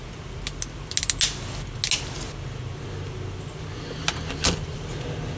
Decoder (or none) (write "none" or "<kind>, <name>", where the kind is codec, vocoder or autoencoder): none